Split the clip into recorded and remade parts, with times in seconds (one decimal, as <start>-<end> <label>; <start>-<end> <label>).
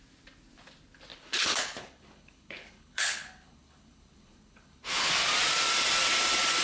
0.0-1.1 recorded; 1.1-5.1 remade; 5.1-6.6 recorded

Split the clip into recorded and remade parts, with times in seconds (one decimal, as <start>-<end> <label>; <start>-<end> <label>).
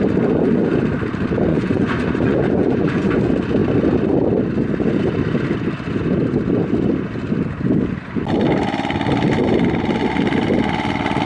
0.0-1.5 recorded; 1.5-3.2 remade; 3.2-11.3 recorded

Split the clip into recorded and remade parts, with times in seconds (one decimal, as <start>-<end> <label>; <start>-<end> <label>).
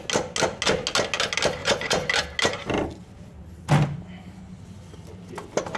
0.0-1.6 recorded; 1.6-2.1 remade; 2.1-5.8 recorded